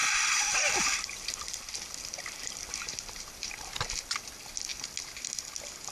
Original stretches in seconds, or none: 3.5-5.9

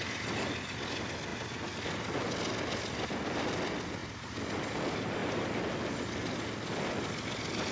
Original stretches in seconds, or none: 0.0-7.7

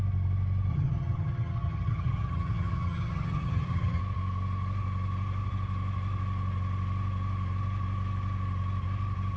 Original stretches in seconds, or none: 0.0-0.7; 4.0-9.4

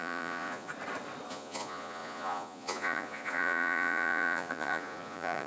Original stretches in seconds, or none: 0.7-1.3